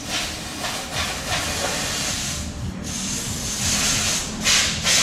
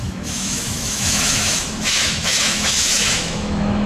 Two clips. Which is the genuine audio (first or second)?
first